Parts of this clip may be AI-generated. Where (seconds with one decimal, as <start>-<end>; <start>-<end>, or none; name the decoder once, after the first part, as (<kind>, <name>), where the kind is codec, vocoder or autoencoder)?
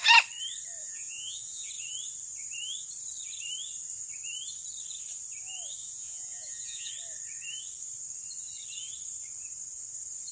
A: 0.8-1.7 (vocoder, Vocos); 5.8-6.9